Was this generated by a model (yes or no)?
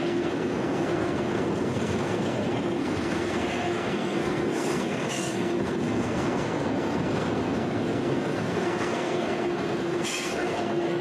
yes